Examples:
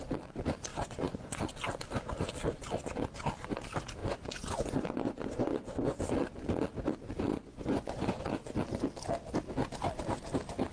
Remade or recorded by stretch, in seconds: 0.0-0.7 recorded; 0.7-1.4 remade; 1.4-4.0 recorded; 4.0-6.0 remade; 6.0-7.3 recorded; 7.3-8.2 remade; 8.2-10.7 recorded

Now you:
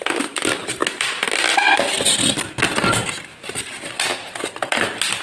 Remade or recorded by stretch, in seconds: 0.0-5.2 recorded